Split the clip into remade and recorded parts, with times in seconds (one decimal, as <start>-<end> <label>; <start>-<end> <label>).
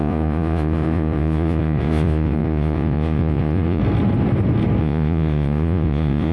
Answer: 0.0-3.8 remade; 3.8-4.8 recorded; 4.8-6.3 remade